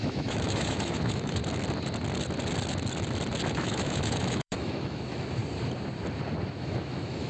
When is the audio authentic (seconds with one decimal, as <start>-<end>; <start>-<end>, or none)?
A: 1.4-3.5; 5.4-6.6